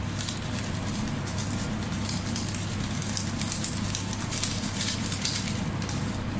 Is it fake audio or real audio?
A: fake